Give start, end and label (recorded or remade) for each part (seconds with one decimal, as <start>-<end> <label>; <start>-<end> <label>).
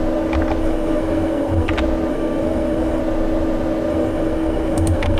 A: 0.0-0.6 recorded; 0.6-1.7 remade; 1.7-2.1 recorded; 2.1-3.0 remade; 3.0-3.9 recorded; 3.9-5.2 remade